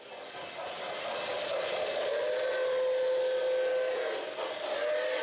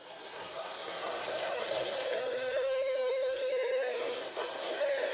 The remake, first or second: second